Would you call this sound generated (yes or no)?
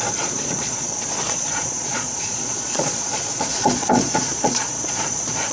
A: yes